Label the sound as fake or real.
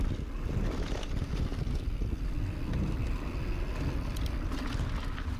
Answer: real